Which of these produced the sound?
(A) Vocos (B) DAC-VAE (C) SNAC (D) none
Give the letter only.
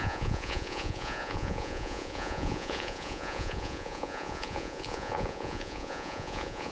A